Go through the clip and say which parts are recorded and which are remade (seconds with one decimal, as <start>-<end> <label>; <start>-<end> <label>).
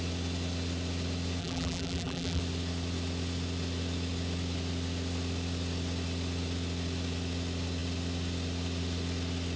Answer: 0.0-1.4 recorded; 1.4-2.4 remade; 2.4-9.6 recorded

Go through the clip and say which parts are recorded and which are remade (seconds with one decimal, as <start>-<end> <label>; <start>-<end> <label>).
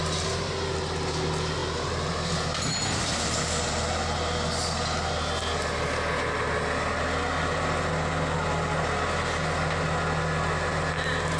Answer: 0.0-11.4 recorded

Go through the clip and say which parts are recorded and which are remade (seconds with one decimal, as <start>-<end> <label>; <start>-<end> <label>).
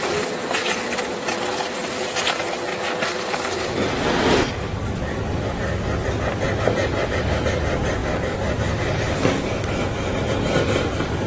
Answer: 0.0-11.3 recorded